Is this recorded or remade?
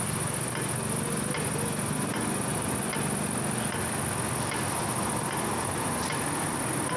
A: recorded